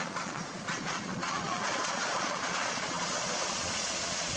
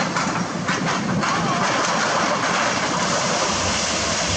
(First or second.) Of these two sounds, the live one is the second